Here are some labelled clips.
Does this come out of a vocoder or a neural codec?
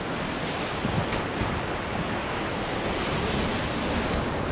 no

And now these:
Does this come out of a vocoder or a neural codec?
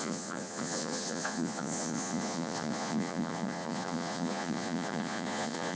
yes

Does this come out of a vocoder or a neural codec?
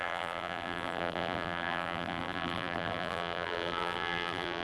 yes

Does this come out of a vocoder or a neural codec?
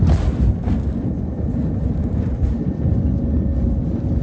no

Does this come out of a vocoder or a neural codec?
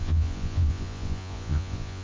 yes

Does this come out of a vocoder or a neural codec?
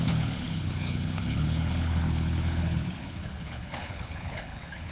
yes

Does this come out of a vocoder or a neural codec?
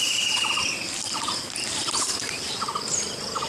no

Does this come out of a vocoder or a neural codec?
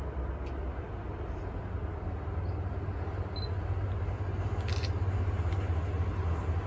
no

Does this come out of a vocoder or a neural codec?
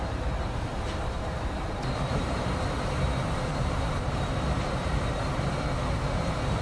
yes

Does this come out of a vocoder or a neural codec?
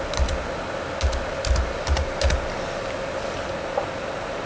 no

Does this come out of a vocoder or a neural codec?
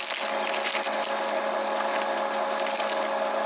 no